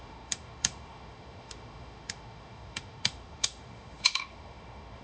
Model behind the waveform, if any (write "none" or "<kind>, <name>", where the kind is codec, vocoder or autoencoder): autoencoder, DAC-VAE